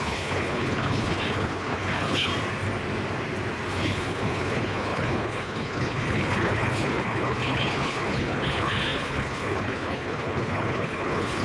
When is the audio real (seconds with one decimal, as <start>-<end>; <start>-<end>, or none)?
2.3-3.7